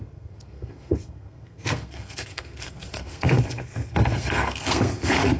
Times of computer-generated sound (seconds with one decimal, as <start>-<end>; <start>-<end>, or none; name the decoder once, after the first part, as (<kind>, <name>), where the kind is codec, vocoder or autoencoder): 0.0-5.4 (codec, SNAC)